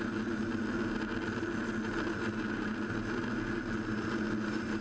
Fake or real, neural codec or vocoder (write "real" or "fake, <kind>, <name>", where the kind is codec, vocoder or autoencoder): real